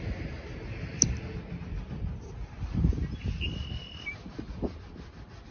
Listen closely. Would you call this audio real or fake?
real